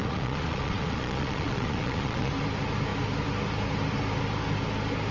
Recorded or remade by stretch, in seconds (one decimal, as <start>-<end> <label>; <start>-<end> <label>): 0.0-2.3 remade; 2.3-5.1 recorded